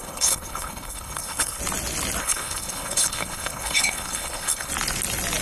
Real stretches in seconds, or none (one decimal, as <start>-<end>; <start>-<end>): 1.6-2.2; 4.7-5.4